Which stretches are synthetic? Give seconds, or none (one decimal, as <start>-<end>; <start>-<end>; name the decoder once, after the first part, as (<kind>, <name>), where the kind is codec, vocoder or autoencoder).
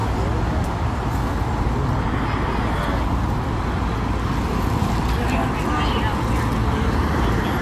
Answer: none